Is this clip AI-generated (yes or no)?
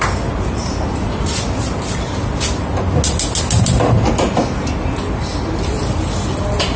no